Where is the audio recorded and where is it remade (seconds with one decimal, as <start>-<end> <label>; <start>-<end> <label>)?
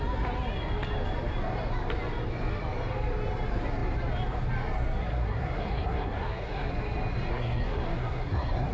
0.0-5.1 recorded; 5.1-6.7 remade; 6.7-7.3 recorded; 7.3-8.7 remade